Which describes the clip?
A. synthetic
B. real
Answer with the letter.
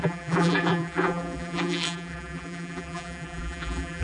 A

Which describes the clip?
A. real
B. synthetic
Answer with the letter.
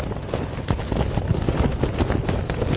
A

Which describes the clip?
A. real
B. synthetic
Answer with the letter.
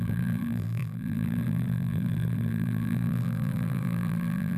B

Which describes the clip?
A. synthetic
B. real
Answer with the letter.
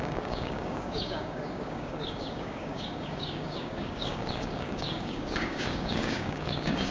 A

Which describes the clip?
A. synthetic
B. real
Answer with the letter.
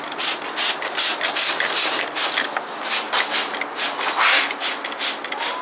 B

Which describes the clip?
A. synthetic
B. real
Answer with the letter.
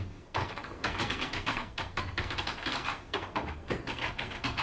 A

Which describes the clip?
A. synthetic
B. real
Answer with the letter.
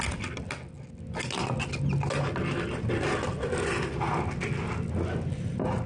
B